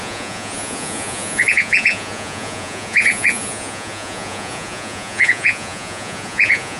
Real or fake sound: fake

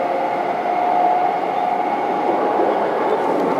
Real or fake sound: real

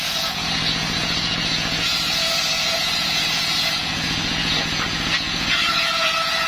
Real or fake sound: fake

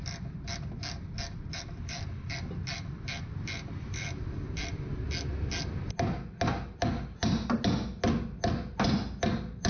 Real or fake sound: real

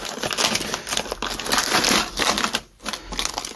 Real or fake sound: real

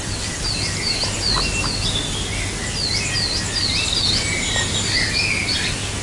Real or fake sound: real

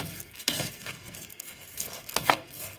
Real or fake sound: fake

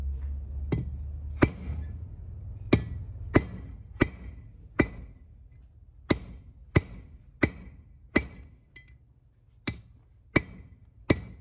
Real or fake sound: real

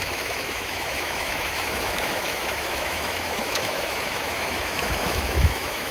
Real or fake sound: fake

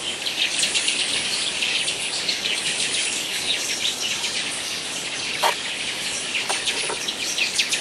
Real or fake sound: fake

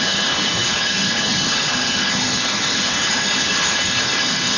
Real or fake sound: fake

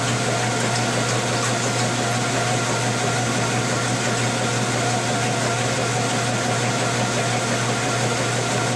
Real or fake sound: real